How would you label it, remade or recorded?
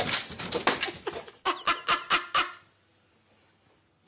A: recorded